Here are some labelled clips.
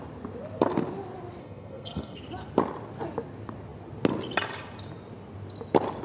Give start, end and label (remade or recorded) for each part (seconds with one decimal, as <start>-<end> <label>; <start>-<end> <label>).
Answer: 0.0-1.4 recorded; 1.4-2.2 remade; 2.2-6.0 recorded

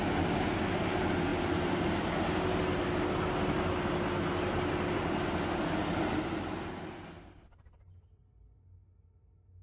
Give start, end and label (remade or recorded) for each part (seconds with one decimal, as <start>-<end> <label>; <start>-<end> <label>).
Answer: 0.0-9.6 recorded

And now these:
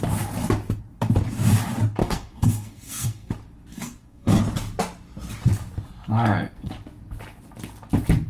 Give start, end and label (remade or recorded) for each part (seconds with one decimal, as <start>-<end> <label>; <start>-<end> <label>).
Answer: 0.0-2.0 recorded; 2.0-3.3 remade; 3.3-3.7 recorded; 3.7-4.4 remade; 4.4-6.0 recorded; 6.0-6.7 remade; 6.7-8.3 recorded

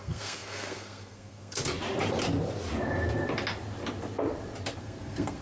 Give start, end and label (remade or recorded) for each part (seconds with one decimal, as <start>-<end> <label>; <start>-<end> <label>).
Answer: 0.0-1.6 remade; 1.6-4.8 recorded; 4.8-5.4 remade

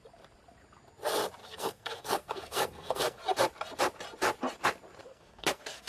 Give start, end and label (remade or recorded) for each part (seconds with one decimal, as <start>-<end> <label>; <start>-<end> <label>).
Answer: 0.0-1.4 recorded; 1.4-3.2 remade; 3.2-5.0 recorded; 5.0-5.9 remade